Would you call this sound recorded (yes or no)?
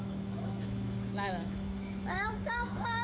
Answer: no